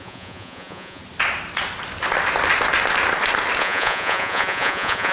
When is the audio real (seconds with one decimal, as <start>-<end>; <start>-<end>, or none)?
1.0-3.6